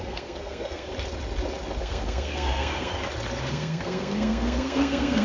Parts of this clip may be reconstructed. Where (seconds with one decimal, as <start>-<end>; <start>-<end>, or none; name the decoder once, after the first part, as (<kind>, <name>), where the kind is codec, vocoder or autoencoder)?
0.0-0.9 (codec, SNAC); 1.8-3.0; 3.5-5.2